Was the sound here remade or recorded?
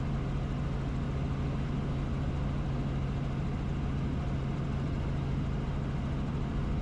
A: recorded